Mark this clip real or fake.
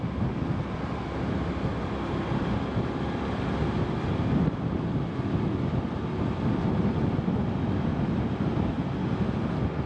real